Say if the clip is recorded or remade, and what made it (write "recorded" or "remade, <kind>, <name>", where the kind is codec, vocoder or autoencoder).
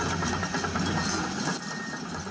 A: recorded